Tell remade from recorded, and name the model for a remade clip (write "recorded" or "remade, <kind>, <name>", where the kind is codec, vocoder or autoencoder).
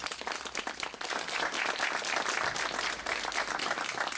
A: recorded